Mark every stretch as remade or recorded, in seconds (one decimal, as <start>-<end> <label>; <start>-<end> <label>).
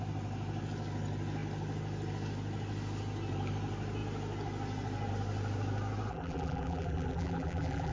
0.0-6.1 recorded; 6.1-7.9 remade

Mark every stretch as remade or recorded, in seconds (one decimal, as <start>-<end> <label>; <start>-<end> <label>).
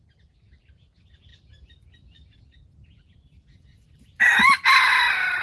0.0-1.3 recorded; 1.3-4.5 remade; 4.5-5.4 recorded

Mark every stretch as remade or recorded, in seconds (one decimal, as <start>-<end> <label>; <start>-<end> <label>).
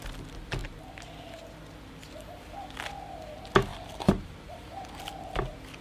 0.0-3.7 recorded; 3.7-5.0 remade; 5.0-5.8 recorded